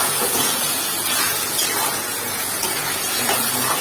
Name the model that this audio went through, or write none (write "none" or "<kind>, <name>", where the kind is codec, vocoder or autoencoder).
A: vocoder, Vocos